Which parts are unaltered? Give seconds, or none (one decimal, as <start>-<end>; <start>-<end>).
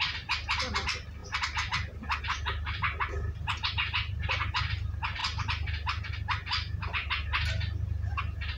0.0-8.6